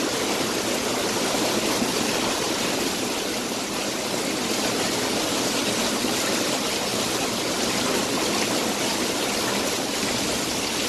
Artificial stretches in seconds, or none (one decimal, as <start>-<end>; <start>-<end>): none